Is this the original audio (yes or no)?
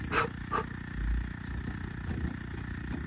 yes